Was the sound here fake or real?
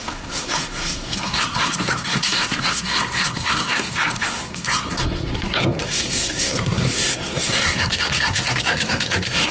fake